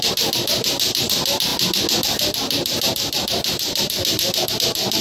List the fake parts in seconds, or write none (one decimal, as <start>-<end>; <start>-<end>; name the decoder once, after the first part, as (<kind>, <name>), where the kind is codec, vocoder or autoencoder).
none